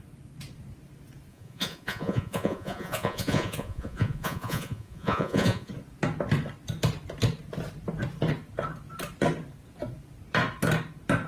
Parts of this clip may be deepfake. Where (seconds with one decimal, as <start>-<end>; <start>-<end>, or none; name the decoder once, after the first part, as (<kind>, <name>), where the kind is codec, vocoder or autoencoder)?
1.3-5.7 (vocoder, Vocos)